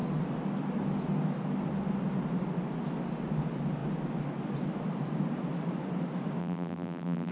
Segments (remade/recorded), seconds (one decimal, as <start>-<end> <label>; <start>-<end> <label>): 0.0-6.4 recorded; 6.4-7.3 remade